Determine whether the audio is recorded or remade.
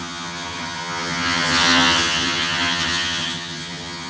remade